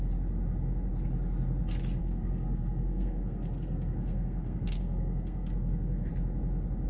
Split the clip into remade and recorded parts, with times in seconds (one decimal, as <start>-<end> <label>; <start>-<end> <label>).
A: 0.0-2.0 recorded; 2.0-6.1 remade; 6.1-6.9 recorded